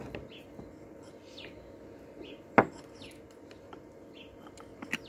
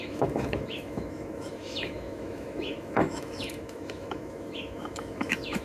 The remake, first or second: second